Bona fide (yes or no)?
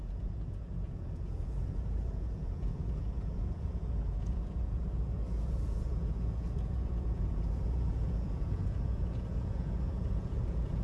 no